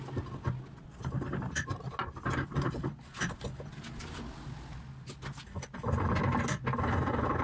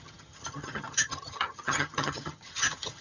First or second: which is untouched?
first